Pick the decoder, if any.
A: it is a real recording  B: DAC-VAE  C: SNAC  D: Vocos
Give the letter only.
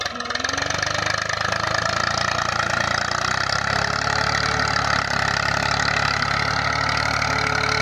A